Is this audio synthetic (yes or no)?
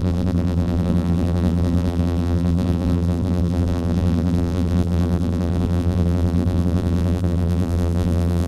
yes